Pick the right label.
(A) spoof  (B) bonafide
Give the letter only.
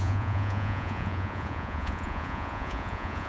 A